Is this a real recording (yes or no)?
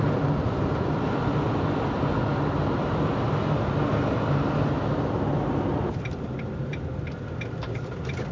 yes